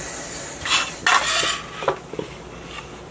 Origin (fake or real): real